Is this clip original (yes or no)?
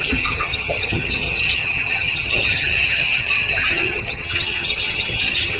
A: no